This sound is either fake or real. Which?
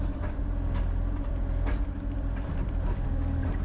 fake